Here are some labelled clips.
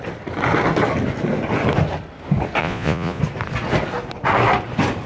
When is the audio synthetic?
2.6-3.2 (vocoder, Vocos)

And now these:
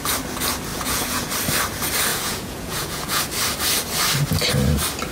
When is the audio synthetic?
0.7-1.3 (vocoder, Vocos); 2.1-3.2